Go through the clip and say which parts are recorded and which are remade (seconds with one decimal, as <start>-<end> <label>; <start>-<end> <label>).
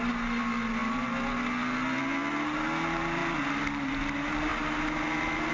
0.0-5.5 recorded